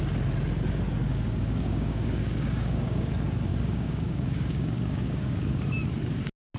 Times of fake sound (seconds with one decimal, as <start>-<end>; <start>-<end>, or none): 1.0-3.1; 3.5-5.6